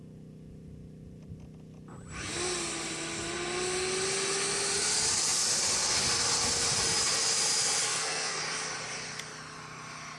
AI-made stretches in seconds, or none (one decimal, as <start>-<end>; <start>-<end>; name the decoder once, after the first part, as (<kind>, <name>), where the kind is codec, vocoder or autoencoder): 7.8-8.4 (codec, SNAC)